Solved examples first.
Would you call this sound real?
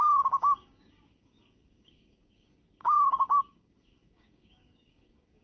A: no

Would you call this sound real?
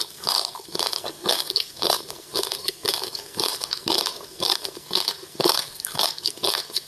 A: no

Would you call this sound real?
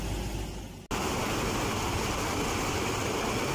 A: yes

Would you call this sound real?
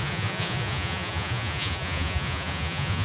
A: no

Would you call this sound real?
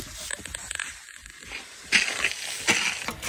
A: yes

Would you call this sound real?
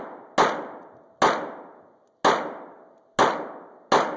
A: yes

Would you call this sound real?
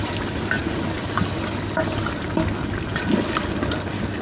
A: yes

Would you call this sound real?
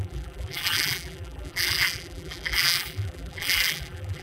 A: no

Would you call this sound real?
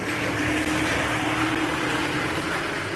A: yes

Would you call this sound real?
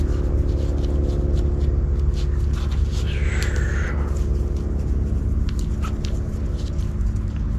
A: yes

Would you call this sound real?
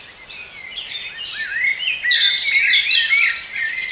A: yes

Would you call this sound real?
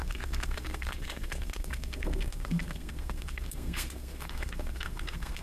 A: no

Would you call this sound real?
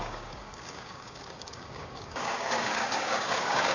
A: no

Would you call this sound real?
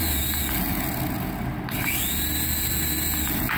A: yes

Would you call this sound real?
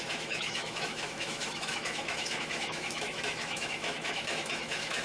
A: no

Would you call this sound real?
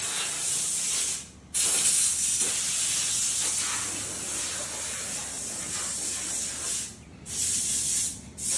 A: yes